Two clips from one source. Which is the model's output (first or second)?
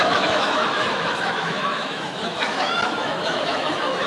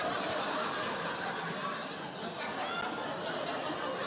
first